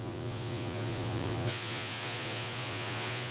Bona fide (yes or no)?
no